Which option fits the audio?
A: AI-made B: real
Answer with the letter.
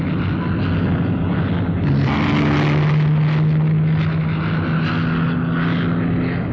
B